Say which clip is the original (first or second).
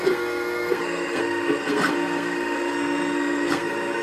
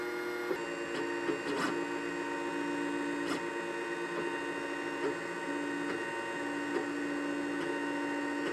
second